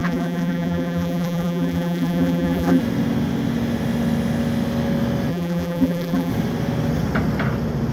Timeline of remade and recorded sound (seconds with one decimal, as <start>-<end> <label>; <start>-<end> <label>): 0.0-2.8 remade; 2.8-5.3 recorded; 5.3-6.3 remade; 6.3-7.9 recorded